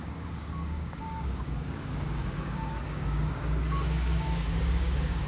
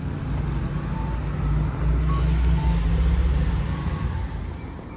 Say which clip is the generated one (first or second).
first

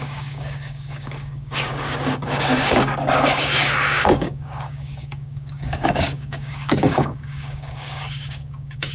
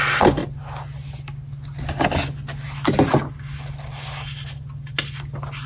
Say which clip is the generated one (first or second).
first